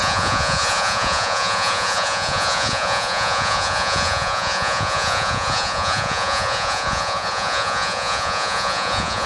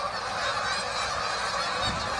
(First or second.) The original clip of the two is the second